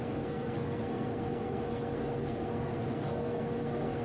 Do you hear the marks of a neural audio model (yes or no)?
yes